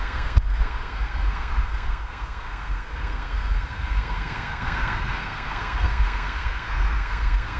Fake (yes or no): yes